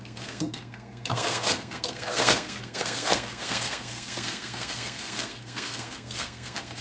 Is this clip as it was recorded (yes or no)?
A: no